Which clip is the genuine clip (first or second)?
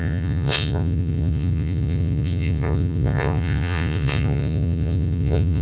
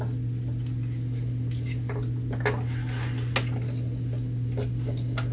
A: second